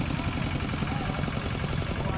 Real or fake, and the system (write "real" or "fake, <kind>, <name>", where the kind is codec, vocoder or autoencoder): real